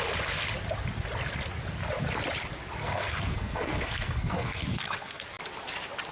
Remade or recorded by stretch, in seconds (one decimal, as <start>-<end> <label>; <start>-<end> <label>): 0.0-2.8 recorded; 2.8-5.2 remade; 5.2-6.1 recorded